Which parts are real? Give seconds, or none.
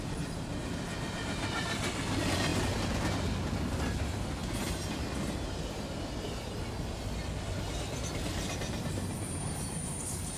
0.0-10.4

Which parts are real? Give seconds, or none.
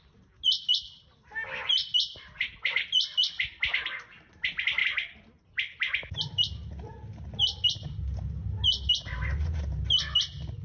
0.0-10.6